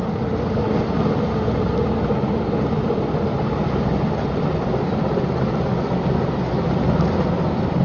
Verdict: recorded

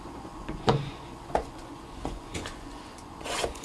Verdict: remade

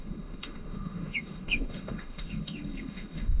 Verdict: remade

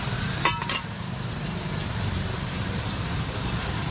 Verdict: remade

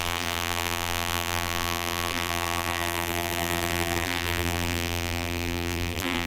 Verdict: remade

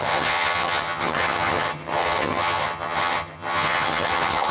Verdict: remade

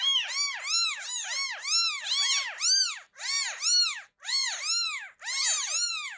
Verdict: recorded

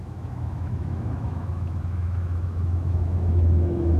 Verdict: remade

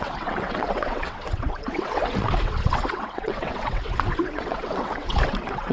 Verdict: remade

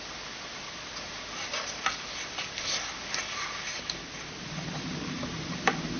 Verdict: recorded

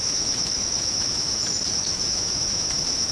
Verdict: remade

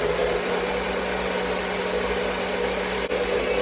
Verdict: recorded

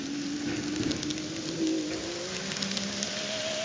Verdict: recorded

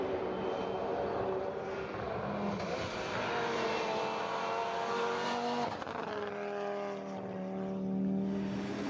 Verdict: recorded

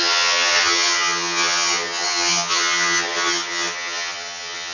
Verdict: remade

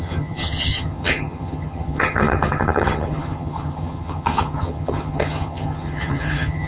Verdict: remade